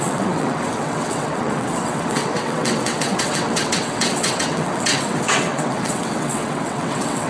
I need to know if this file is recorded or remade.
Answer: remade